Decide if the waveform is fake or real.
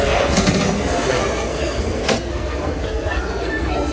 fake